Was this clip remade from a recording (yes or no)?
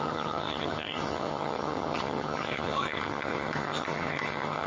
yes